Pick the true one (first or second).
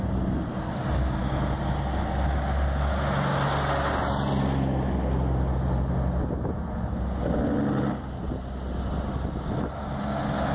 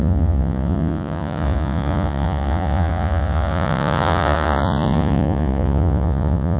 first